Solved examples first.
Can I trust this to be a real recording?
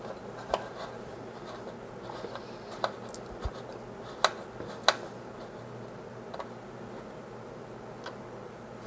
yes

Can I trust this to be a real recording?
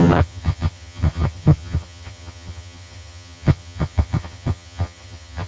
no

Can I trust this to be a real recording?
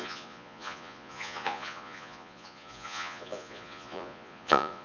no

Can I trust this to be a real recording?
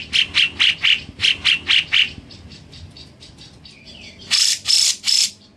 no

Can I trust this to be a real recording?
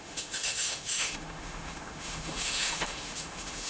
no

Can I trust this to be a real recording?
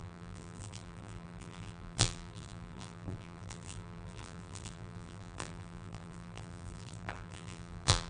no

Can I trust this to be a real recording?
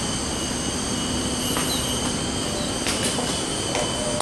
yes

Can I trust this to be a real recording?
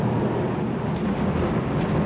yes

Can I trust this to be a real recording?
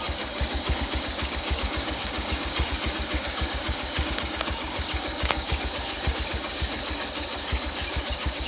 no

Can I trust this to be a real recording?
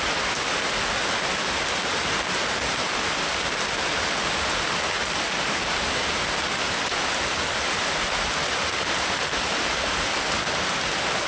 yes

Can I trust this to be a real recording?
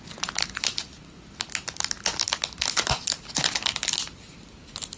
yes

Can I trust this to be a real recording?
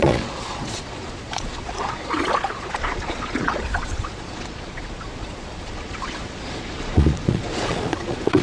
no